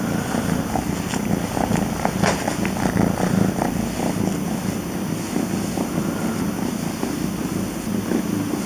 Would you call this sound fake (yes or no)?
no